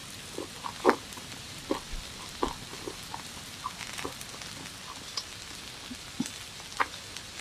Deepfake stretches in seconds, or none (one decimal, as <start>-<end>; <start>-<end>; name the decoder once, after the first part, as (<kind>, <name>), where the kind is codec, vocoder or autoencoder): none